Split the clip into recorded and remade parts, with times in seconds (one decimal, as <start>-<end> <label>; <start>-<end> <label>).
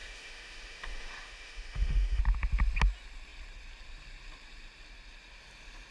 0.0-2.2 remade; 2.2-5.9 recorded